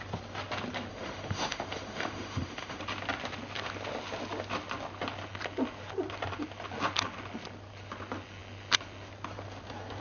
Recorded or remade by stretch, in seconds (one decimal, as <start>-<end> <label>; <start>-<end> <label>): 0.0-0.9 recorded; 0.9-2.8 remade; 2.8-10.0 recorded